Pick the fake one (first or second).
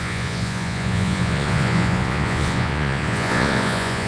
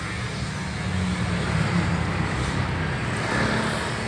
first